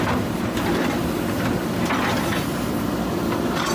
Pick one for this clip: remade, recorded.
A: recorded